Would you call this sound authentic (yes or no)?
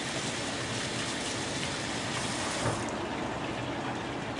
yes